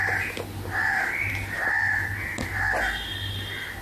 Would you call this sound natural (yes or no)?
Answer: yes